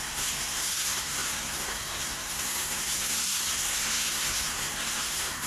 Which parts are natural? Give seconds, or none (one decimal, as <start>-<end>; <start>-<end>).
none

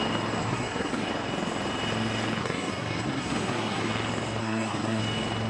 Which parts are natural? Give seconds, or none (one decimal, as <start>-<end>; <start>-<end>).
0.0-0.4; 1.1-2.4; 3.9-4.4; 5.0-5.5

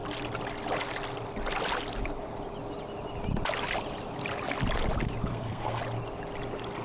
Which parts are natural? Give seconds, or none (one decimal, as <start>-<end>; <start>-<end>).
0.0-5.3; 5.8-6.8

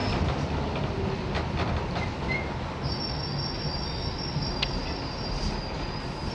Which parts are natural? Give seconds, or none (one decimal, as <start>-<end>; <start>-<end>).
0.0-6.3

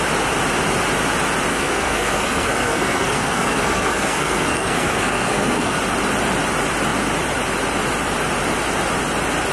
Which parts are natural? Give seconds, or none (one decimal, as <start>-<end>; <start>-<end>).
0.0-1.5; 5.8-9.5

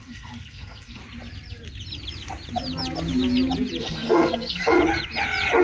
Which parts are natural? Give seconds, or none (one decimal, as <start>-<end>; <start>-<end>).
1.0-3.8; 4.8-5.6

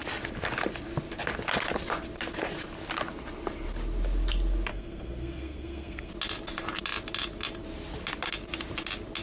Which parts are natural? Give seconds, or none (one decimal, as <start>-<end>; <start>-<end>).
0.0-4.7; 6.1-9.2

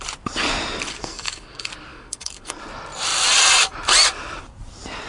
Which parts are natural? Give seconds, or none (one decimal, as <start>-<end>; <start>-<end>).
0.0-0.9; 2.6-5.1